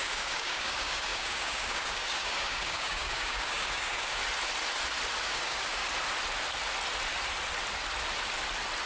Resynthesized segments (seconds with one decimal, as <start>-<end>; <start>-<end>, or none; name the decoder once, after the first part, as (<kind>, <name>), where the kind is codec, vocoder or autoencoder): 0.0-4.2 (codec, DAC); 5.2-5.8